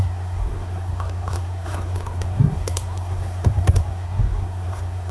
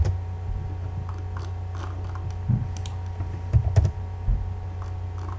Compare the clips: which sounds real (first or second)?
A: second